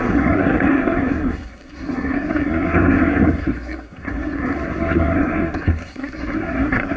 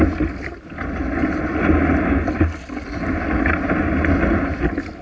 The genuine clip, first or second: second